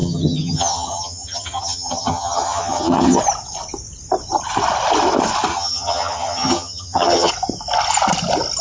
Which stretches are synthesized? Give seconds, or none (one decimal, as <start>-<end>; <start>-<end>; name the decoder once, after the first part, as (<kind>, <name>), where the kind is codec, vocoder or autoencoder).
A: 0.0-3.2 (vocoder, HiFi-GAN); 5.5-7.3

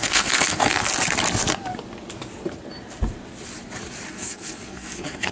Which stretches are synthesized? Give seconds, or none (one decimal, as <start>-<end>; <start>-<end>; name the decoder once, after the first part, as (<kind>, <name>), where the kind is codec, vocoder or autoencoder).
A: 0.0-0.9 (codec, SNAC); 4.1-5.3

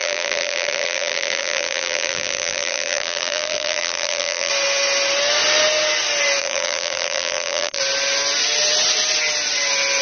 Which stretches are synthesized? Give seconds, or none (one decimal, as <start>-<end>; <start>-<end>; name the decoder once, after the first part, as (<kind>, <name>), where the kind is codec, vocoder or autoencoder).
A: 0.0-4.5 (vocoder, BigVGAN v2); 6.4-7.8

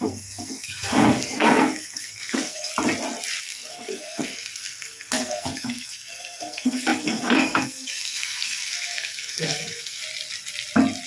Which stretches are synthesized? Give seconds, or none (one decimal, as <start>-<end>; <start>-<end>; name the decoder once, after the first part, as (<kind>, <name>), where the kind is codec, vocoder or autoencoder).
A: 0.0-2.7 (codec, SNAC); 3.4-10.0

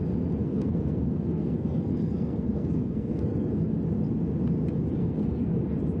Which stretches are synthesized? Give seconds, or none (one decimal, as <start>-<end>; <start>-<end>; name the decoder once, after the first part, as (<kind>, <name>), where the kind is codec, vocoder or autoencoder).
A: 0.4-3.8 (codec, SNAC); 5.0-5.6

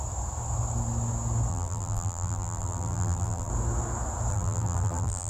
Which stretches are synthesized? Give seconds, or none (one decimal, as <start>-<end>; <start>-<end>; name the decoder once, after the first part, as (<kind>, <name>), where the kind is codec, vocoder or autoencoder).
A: 1.5-3.5 (vocoder, BigVGAN v2); 4.3-5.3

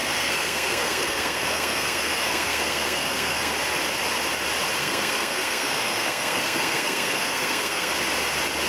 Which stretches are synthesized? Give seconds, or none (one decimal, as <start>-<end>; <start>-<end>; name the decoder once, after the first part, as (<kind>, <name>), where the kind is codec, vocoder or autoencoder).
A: 0.0-3.5 (codec, SNAC); 4.8-7.9